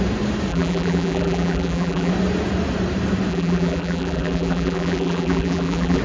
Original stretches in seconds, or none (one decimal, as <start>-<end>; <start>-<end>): 0.0-0.5; 2.1-3.3